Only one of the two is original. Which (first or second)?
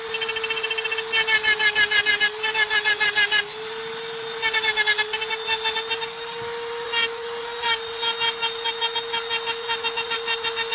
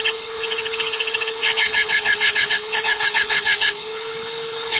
first